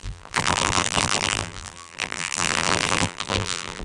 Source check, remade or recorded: remade